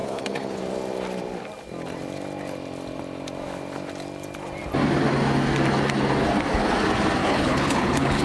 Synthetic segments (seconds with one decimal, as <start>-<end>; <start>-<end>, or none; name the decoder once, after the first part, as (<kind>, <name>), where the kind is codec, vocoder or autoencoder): 0.0-0.6 (codec, HILCodec); 7.2-8.2